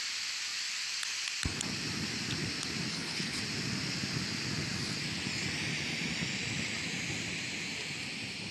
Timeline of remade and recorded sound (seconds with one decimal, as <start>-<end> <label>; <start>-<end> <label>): 0.0-2.9 recorded; 2.9-3.4 remade; 3.4-8.5 recorded